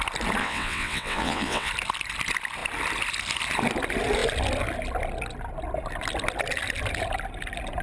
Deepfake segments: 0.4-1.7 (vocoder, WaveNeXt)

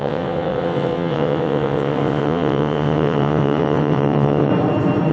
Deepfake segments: 0.0-4.5 (vocoder, WaveNeXt)